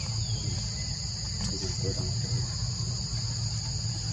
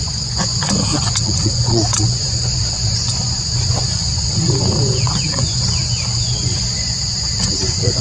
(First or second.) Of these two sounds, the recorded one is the first